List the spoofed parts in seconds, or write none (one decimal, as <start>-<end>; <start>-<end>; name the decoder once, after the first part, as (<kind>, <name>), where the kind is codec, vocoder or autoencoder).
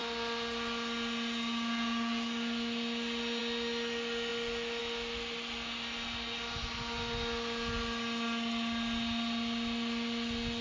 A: none